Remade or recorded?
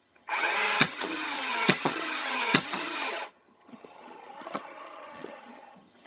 remade